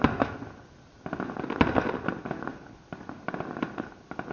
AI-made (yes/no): no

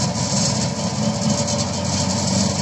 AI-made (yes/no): no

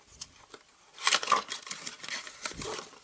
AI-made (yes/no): yes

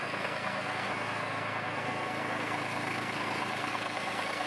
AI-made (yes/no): yes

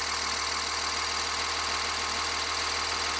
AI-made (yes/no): no